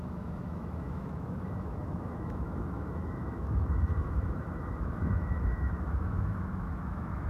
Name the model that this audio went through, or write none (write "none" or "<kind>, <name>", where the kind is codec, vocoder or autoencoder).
autoencoder, DAC-VAE